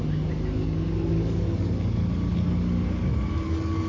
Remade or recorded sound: remade